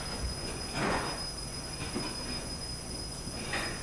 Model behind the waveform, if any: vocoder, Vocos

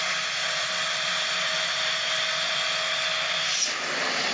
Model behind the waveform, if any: none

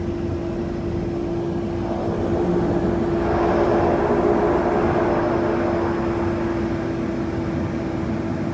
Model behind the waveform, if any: none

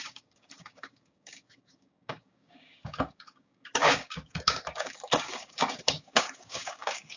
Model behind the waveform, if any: codec, DAC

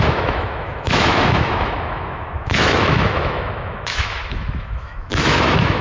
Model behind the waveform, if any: autoencoder, DAC-VAE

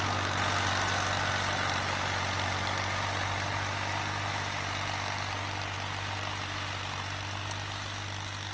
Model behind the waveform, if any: none